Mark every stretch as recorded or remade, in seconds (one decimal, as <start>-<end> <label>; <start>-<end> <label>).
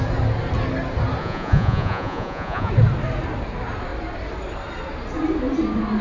0.0-1.2 recorded; 1.2-2.7 remade; 2.7-6.0 recorded